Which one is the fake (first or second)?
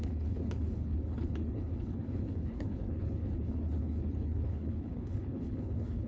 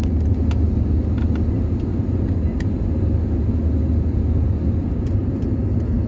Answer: first